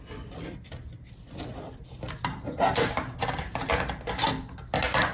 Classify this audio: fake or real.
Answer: real